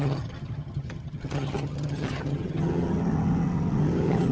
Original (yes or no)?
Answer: no